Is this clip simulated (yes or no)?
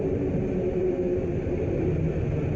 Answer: no